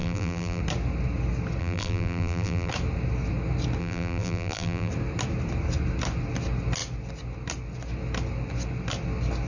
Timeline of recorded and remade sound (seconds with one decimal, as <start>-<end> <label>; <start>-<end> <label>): 0.0-0.6 remade; 0.6-1.6 recorded; 1.6-2.7 remade; 2.7-3.8 recorded; 3.8-4.9 remade; 4.9-9.5 recorded